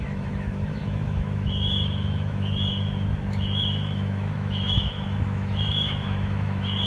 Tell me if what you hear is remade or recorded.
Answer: remade